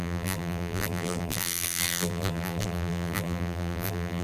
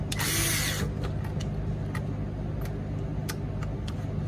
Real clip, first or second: second